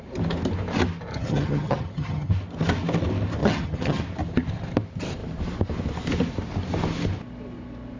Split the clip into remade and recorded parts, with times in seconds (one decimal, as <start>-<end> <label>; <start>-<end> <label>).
0.0-1.1 recorded; 1.1-2.3 remade; 2.3-3.4 recorded; 3.4-4.0 remade; 4.0-8.0 recorded